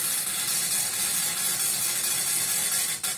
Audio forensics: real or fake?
real